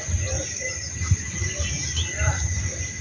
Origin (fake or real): real